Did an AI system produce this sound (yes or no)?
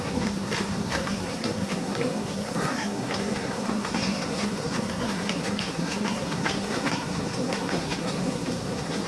yes